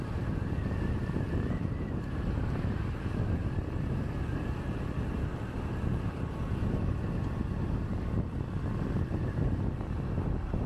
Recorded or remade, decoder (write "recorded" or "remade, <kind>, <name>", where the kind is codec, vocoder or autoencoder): recorded